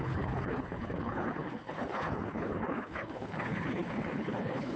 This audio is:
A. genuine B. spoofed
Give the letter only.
B